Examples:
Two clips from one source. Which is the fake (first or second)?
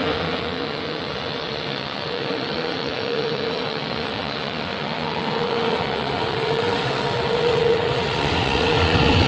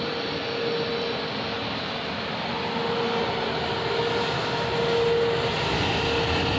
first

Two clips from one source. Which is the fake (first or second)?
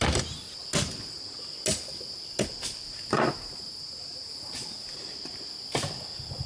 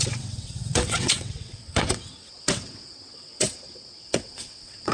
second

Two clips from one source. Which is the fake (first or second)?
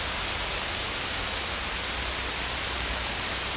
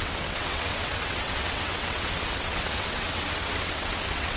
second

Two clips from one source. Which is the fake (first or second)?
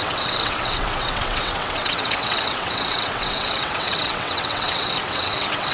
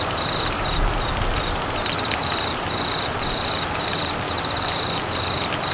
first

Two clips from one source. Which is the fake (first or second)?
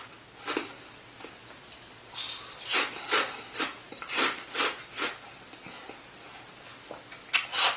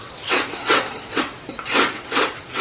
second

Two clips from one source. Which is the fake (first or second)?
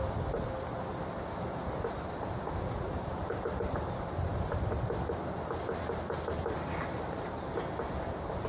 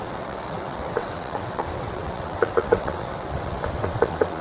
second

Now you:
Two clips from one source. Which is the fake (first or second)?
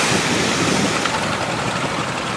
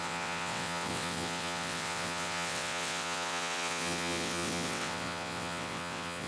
second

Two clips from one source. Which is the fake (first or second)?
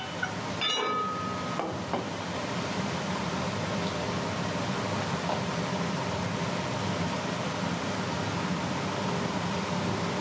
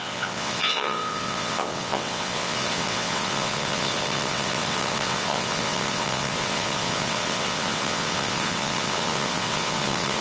second